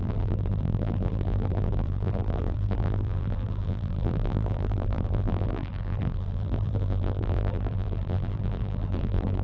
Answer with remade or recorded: remade